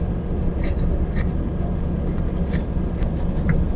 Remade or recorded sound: recorded